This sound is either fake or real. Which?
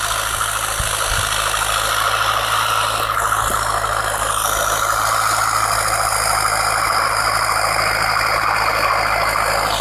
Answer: real